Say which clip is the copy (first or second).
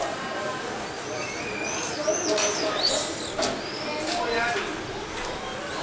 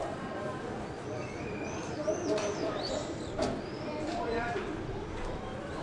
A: second